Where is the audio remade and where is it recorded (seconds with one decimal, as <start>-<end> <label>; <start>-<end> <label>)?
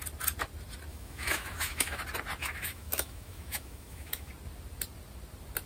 0.0-0.9 recorded; 0.9-2.0 remade; 2.0-2.4 recorded; 2.4-4.3 remade; 4.3-5.7 recorded